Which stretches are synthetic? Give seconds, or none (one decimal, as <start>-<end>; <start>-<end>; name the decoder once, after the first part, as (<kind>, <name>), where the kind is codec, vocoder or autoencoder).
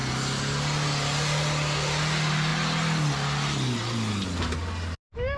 none